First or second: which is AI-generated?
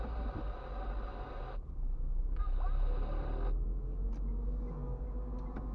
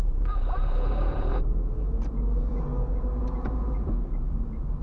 second